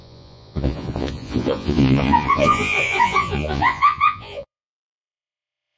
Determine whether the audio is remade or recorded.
remade